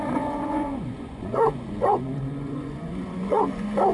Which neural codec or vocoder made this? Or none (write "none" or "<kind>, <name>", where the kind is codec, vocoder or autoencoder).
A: vocoder, Vocos